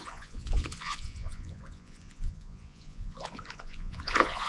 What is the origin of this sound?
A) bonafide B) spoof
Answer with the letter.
B